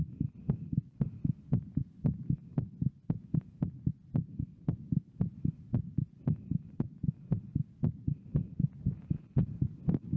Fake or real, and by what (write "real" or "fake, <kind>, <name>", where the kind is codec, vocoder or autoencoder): real